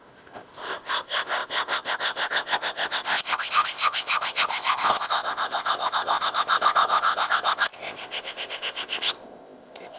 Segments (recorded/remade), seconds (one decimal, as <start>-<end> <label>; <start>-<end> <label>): 0.0-10.0 remade